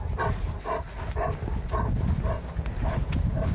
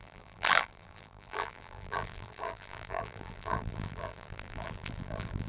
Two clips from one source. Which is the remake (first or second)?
second